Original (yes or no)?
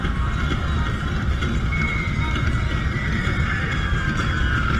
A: yes